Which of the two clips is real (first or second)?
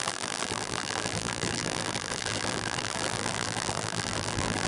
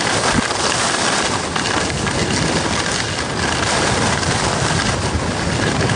second